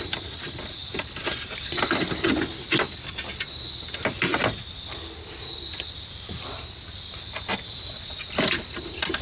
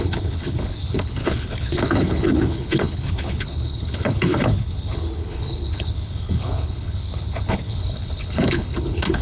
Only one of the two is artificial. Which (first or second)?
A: second